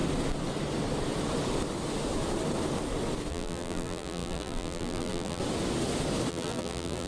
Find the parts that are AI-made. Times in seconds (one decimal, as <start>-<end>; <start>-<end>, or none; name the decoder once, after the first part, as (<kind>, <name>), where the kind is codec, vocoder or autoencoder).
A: 3.3-5.4 (vocoder, BigVGAN v2); 6.3-7.1